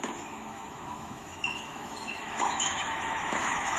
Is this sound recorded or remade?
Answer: remade